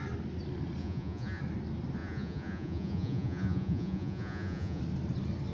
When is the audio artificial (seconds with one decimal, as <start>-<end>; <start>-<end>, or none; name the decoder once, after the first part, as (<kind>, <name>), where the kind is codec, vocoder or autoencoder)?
0.8-1.4 (vocoder, Vocos); 2.0-4.8

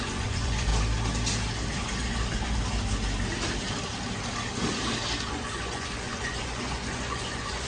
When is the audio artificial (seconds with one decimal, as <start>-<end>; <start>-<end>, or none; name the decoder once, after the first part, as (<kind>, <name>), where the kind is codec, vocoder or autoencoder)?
0.0-0.7 (vocoder, Vocos); 5.3-7.7

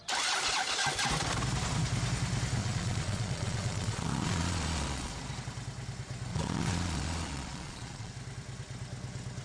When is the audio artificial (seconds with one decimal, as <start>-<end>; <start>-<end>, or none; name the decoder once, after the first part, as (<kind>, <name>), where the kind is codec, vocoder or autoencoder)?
2.6-5.1 (vocoder, Vocos); 6.3-8.1

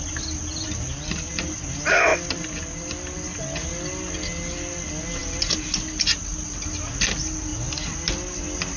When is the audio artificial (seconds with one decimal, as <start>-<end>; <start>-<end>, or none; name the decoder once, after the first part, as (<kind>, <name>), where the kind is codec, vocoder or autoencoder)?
none